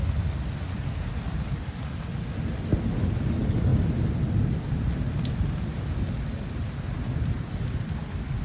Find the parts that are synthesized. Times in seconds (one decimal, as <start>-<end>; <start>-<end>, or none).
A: none